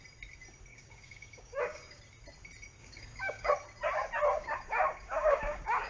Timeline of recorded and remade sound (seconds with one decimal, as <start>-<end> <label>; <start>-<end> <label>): 0.0-0.7 recorded; 0.7-2.0 remade; 2.0-2.8 recorded; 2.8-3.5 remade; 3.5-4.4 recorded; 4.4-5.9 remade